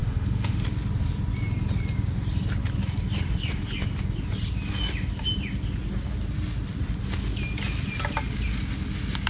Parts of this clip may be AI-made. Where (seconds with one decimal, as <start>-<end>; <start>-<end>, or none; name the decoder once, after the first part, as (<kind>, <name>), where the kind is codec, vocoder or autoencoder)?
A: 0.0-0.6 (autoencoder, DAC-VAE)